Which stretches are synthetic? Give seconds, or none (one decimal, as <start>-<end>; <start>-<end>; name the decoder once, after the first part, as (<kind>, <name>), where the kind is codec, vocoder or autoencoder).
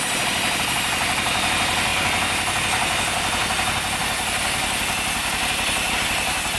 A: none